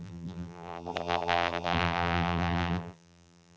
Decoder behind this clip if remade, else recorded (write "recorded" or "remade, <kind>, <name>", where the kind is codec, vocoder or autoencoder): remade, vocoder, BigVGAN v2